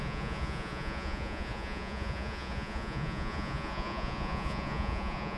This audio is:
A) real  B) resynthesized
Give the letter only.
B